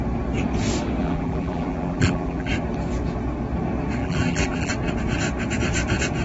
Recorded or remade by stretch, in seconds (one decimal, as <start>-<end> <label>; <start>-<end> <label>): 0.0-1.0 recorded; 1.0-2.5 remade; 2.5-4.0 recorded; 4.0-4.7 remade; 4.7-6.2 recorded